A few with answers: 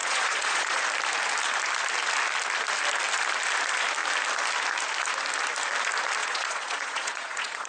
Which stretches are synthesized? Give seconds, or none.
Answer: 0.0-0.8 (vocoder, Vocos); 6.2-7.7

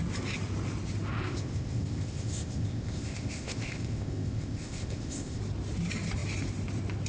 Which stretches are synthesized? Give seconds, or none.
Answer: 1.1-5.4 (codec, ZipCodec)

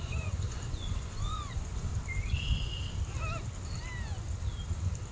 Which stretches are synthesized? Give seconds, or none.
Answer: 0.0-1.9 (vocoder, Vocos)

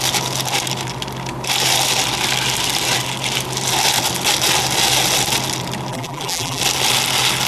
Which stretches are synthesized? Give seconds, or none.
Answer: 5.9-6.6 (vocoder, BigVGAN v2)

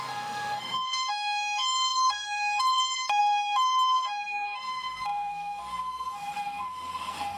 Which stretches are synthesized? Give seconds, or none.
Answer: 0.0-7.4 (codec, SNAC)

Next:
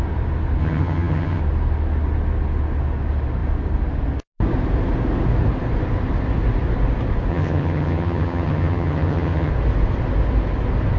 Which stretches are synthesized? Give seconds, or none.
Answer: 0.6-1.4 (vocoder, HiFi-GAN); 7.3-9.5